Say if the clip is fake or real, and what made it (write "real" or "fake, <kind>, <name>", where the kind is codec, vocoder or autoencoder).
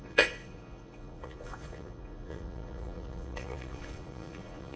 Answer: fake, vocoder, Vocos